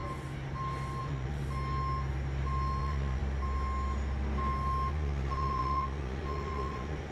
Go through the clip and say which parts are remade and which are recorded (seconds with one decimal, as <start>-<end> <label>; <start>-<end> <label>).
0.0-1.0 recorded; 1.0-1.4 remade; 1.4-2.8 recorded; 2.8-3.2 remade; 3.2-4.9 recorded; 4.9-7.1 remade